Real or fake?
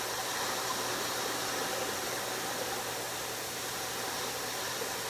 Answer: real